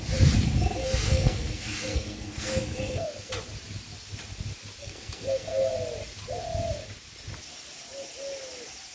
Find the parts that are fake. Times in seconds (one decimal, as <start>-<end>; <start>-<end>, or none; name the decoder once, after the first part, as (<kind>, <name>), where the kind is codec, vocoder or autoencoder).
0.8-3.3 (codec, SNAC); 4.8-5.7